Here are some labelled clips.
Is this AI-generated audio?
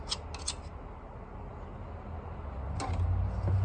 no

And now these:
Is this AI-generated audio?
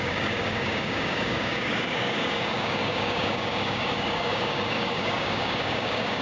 yes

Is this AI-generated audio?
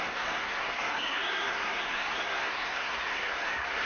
yes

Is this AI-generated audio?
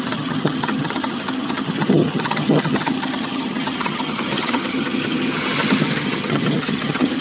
yes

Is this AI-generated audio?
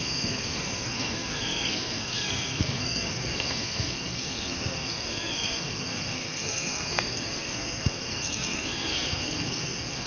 yes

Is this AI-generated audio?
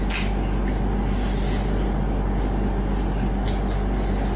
no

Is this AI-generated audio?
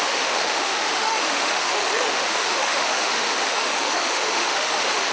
yes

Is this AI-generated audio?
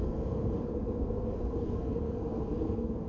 yes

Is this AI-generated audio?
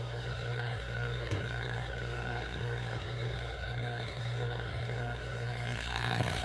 yes